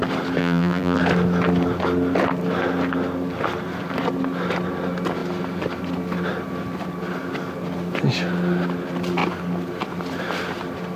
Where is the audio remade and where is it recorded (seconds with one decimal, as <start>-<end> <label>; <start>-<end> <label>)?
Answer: 0.0-0.4 recorded; 0.4-1.0 remade; 1.0-11.0 recorded